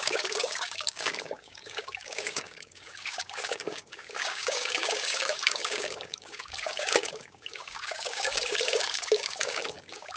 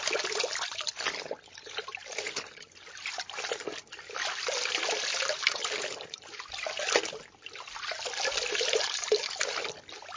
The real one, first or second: second